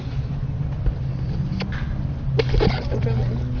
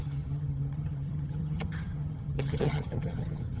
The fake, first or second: second